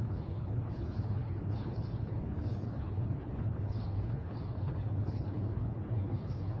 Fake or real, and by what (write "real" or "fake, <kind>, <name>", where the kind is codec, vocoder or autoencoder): fake, codec, HILCodec